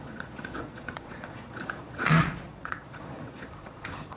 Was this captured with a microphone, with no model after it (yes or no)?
no